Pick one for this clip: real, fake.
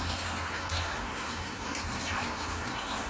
fake